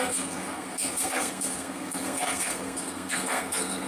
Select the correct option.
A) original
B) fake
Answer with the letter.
B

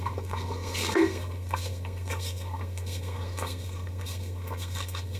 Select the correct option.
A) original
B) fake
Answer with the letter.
B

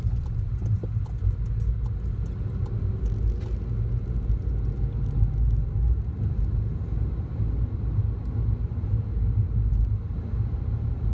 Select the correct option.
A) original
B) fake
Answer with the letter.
A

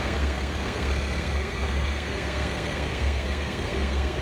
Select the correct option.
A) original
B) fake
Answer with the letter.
B